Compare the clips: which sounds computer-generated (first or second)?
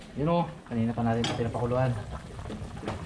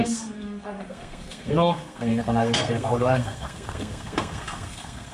second